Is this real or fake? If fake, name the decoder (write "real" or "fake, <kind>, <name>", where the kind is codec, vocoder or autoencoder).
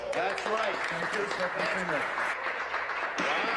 fake, vocoder, Vocos